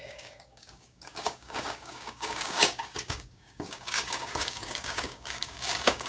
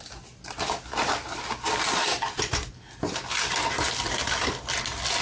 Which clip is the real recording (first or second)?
second